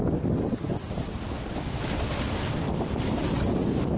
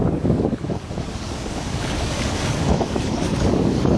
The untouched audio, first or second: first